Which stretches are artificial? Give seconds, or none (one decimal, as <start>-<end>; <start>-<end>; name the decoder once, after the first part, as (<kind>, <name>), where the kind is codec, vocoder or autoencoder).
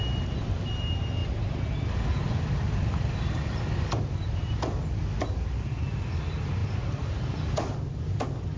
none